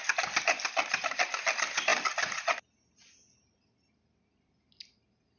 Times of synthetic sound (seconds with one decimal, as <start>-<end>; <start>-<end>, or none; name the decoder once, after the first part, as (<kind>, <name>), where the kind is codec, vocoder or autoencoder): none